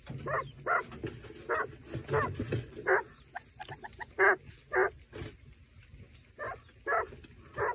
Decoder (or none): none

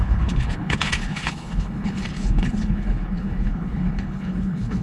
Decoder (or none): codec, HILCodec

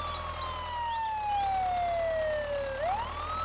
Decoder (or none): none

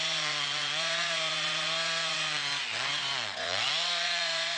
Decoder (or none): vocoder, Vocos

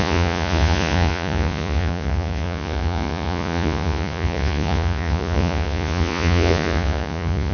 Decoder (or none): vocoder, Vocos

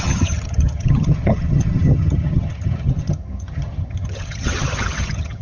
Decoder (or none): vocoder, HiFi-GAN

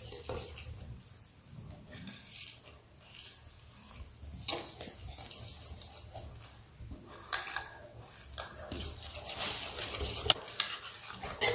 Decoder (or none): none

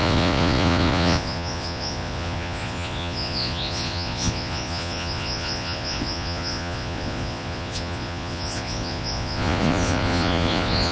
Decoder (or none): vocoder, Vocos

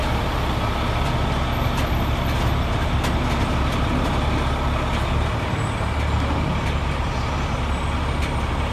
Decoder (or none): none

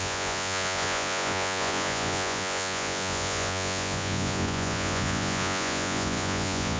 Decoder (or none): vocoder, Vocos